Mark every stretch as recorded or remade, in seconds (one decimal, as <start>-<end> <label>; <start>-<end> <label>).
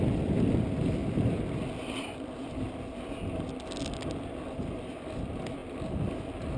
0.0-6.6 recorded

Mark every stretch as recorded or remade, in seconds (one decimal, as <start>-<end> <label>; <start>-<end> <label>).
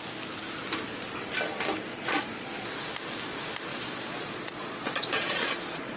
0.0-1.9 recorded; 1.9-2.7 remade; 2.7-3.7 recorded; 3.7-6.0 remade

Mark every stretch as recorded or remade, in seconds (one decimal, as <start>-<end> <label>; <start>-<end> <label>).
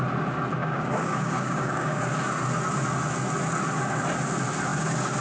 0.0-0.6 recorded; 0.6-2.0 remade; 2.0-5.2 recorded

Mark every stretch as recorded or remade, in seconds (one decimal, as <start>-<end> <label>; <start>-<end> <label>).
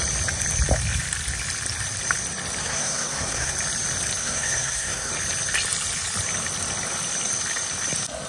0.0-2.6 recorded; 2.6-3.5 remade; 3.5-4.2 recorded; 4.2-5.1 remade; 5.1-8.3 recorded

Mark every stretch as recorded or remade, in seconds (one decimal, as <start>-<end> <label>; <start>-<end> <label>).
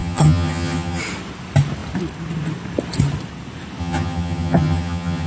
0.0-1.0 remade; 1.0-3.8 recorded; 3.8-5.3 remade